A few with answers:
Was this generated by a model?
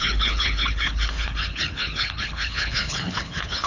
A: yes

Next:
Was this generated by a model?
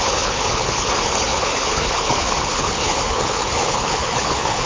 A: yes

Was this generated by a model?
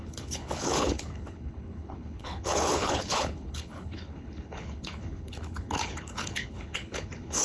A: yes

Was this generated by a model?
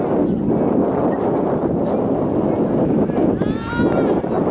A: no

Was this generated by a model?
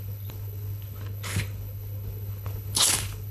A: yes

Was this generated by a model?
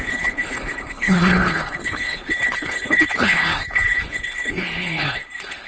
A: yes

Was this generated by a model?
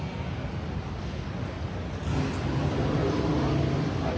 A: no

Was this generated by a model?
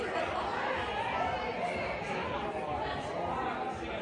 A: no